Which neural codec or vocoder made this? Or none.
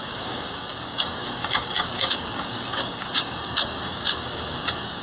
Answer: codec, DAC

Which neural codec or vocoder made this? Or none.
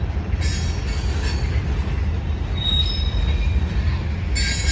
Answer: none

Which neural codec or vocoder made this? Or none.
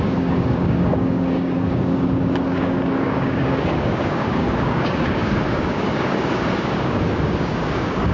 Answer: codec, DAC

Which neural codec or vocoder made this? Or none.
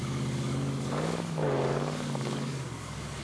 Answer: codec, DAC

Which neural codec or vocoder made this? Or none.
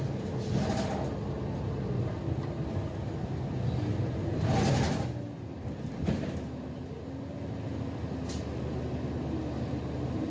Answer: none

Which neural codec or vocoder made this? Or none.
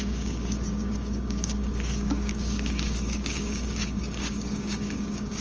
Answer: codec, DAC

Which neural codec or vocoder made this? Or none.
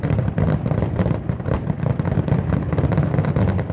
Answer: none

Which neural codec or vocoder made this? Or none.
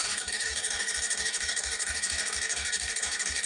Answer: codec, DAC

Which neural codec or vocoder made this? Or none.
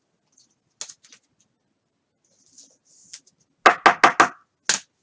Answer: none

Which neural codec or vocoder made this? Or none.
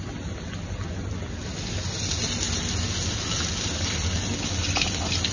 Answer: none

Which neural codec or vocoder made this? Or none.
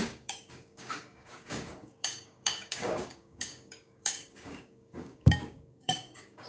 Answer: codec, DAC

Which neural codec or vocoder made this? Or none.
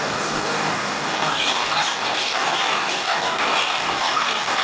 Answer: codec, DAC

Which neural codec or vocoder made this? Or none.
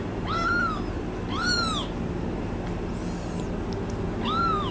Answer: none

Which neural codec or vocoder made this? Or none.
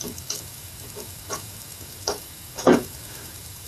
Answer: codec, DAC